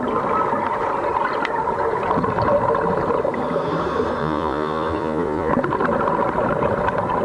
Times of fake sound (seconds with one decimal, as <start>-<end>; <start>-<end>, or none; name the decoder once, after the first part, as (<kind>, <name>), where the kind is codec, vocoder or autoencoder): 4.2-5.5 (vocoder, Vocos)